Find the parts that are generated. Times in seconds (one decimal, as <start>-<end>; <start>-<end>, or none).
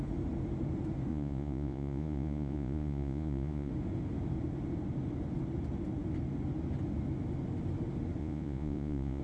1.1-3.7; 8.2-9.2